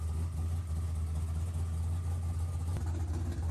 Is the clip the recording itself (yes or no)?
yes